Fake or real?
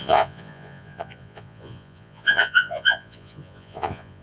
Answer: fake